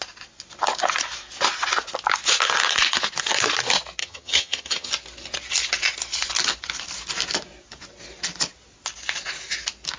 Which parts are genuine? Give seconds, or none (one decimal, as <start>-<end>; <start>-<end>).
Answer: 0.0-4.0; 4.9-10.0